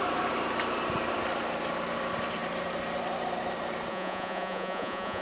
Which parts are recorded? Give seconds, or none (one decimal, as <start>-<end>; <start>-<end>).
0.0-3.9